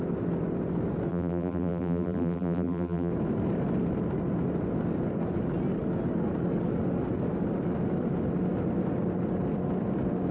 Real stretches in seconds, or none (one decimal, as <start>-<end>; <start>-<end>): 0.0-1.1; 3.1-10.3